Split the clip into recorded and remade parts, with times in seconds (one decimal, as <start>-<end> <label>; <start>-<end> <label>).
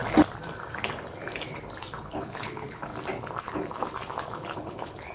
0.0-1.8 recorded; 1.8-2.9 remade; 2.9-3.4 recorded; 3.4-5.1 remade